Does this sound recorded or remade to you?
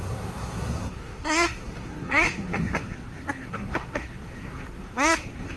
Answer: remade